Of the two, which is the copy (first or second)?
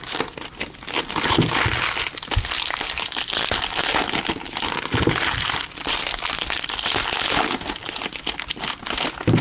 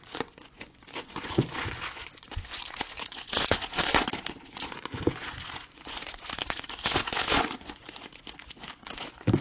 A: second